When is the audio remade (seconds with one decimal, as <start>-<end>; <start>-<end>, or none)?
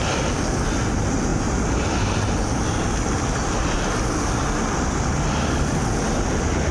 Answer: none